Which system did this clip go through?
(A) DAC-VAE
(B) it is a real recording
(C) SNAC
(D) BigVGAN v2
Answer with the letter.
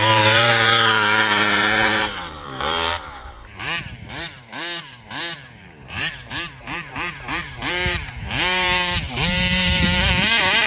D